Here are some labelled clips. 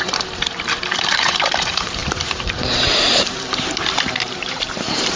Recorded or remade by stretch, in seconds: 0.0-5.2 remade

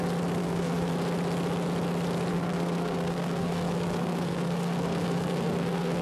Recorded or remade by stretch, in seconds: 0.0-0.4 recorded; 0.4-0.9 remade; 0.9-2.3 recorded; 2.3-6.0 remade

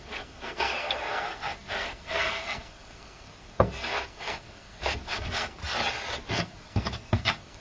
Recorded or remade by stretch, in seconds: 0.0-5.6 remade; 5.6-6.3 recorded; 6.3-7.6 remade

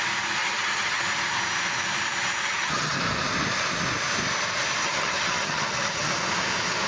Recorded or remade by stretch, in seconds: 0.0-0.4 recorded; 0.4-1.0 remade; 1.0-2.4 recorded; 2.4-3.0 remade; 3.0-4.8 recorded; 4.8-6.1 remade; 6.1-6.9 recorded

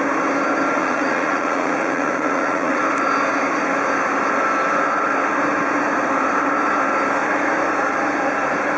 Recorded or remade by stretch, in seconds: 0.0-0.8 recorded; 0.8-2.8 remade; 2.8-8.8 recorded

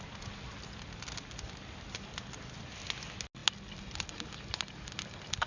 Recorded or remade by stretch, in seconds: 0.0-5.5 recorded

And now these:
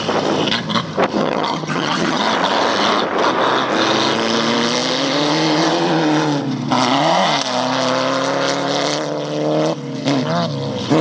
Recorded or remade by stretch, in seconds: 0.0-1.2 recorded; 1.2-2.2 remade; 2.2-11.0 recorded